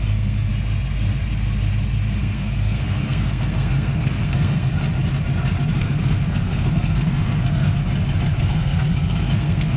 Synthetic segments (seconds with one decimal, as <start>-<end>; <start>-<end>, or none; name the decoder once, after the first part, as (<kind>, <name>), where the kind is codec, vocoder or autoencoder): 0.0-0.5 (codec, SNAC); 2.2-4.7; 5.8-7.8; 8.4-9.8